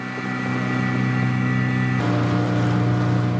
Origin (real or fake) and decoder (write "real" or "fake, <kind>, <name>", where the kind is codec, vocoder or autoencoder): real